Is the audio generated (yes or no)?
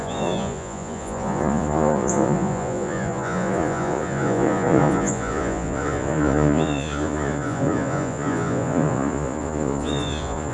yes